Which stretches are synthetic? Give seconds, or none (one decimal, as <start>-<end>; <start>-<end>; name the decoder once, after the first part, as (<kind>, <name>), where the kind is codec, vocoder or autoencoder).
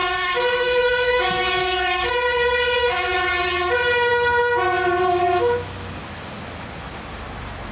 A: 0.0-2.1 (autoencoder, DAC-VAE); 2.8-3.3